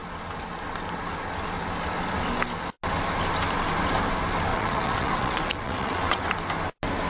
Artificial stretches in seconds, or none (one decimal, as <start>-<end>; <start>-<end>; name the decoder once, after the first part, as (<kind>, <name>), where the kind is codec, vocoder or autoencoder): 4.5-6.2 (vocoder, WaveNeXt)